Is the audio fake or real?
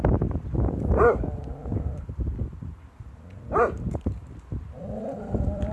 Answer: fake